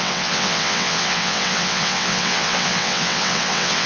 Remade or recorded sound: remade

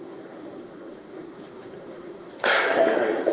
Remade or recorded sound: remade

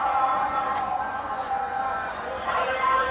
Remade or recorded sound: remade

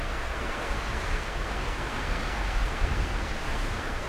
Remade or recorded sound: remade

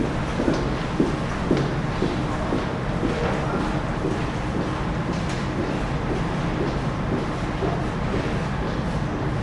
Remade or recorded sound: recorded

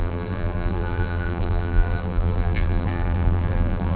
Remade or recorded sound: remade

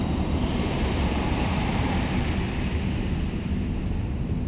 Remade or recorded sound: recorded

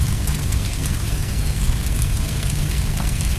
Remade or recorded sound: remade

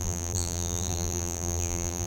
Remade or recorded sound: remade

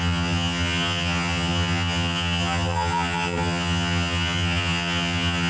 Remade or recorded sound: remade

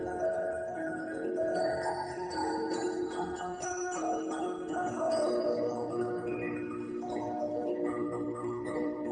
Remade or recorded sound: remade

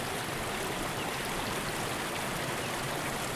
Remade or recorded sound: recorded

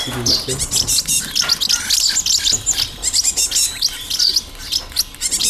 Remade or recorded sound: recorded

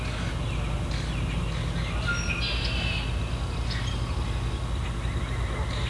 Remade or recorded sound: recorded